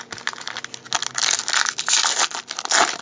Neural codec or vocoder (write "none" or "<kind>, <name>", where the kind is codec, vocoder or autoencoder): none